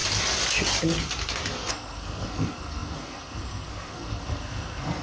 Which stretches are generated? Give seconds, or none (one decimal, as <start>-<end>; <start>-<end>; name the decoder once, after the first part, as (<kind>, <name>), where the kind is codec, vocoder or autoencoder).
1.7-5.0 (codec, SNAC)